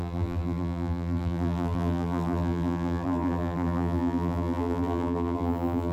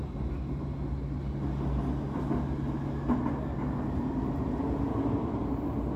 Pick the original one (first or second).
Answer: second